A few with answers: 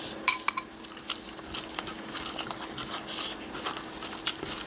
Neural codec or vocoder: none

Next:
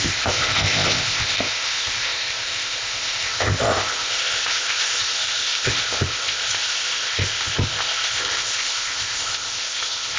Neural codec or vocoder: codec, ZipCodec